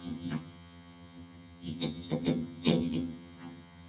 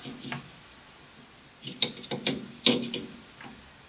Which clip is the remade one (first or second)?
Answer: first